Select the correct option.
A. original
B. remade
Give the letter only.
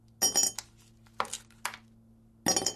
A